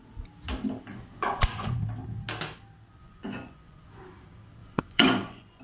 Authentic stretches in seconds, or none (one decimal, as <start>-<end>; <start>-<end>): 0.0-0.9; 1.8-3.0; 4.0-4.6